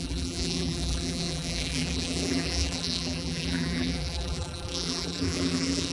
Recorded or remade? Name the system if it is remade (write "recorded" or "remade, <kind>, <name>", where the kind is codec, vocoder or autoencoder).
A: remade, vocoder, BigVGAN v2